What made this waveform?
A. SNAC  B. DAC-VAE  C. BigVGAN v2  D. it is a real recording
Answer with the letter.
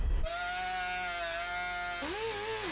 D